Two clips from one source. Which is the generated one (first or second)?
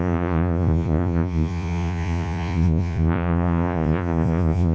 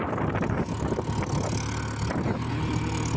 first